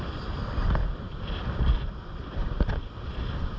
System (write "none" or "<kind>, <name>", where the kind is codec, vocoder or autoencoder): vocoder, BigVGAN v2